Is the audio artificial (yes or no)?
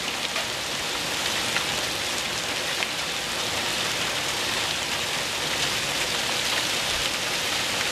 no